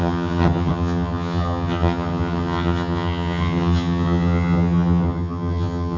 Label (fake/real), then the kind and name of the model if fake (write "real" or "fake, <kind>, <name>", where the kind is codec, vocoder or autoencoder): fake, vocoder, HiFi-GAN